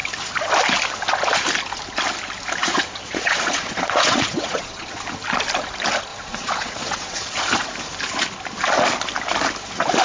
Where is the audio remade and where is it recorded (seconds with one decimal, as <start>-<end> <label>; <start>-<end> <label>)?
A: 0.0-2.6 recorded; 2.6-5.0 remade; 5.0-6.1 recorded; 6.1-7.5 remade; 7.5-10.0 recorded